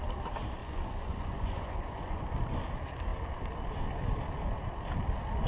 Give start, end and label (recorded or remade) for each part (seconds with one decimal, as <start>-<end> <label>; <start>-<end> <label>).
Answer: 0.0-0.6 recorded; 0.6-2.2 remade; 2.2-5.5 recorded